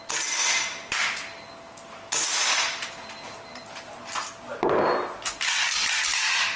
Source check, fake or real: real